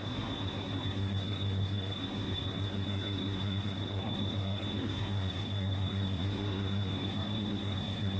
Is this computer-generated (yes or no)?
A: yes